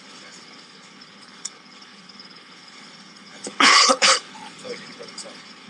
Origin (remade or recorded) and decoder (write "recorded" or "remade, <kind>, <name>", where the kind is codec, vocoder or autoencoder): remade, codec, HILCodec